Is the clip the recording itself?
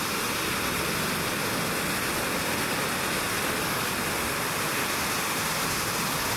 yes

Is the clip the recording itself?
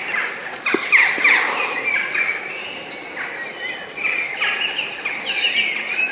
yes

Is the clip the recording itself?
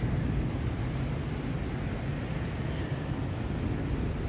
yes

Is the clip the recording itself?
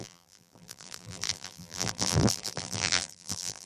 no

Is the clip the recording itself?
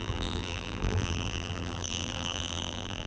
no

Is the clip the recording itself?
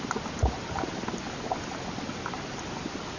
yes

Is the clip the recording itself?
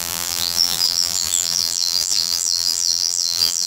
no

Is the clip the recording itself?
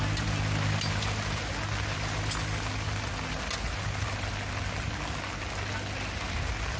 yes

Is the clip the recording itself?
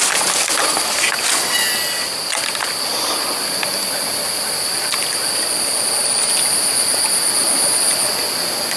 yes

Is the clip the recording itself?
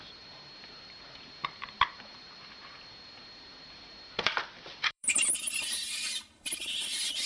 no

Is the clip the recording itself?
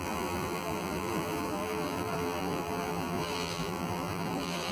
no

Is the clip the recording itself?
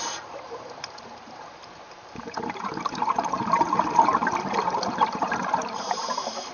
no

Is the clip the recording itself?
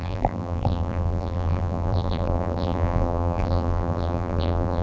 no